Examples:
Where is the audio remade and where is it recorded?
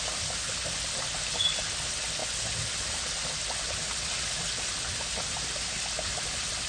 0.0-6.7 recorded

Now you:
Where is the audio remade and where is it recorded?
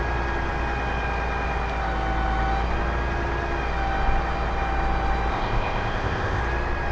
0.0-5.3 recorded; 5.3-6.4 remade; 6.4-6.9 recorded